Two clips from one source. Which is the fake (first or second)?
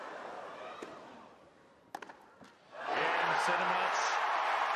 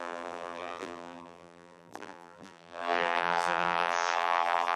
second